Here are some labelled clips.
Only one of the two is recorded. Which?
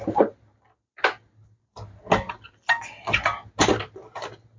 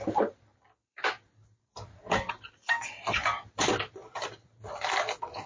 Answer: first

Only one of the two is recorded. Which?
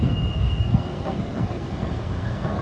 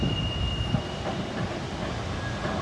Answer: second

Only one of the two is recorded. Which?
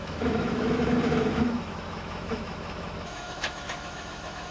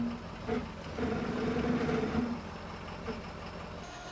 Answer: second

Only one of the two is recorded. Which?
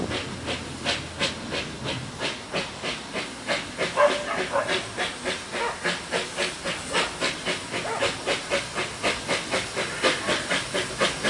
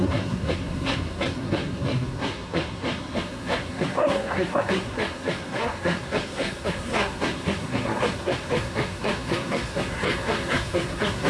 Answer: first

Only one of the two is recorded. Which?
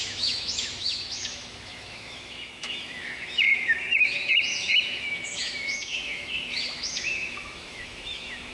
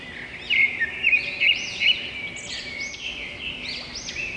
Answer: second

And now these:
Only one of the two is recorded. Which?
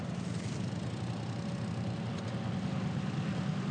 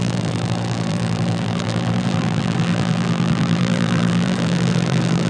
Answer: first